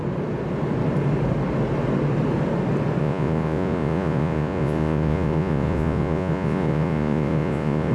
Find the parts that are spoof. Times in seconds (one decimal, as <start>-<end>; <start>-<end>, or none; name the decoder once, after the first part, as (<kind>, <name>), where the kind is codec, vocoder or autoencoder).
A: 3.0-7.9 (vocoder, Vocos)